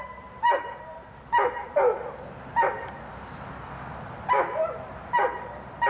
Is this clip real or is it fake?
real